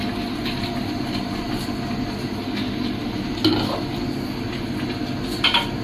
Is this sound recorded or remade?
recorded